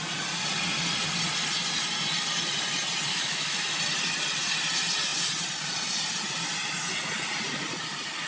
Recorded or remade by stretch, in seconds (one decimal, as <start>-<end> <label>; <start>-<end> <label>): 0.0-3.1 recorded; 3.1-3.8 remade; 3.8-8.3 recorded